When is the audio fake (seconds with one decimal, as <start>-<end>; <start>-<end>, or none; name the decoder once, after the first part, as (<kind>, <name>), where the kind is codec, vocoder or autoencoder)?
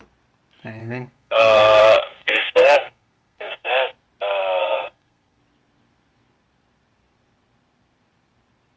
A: 0.8-3.7 (codec, SNAC); 4.6-5.4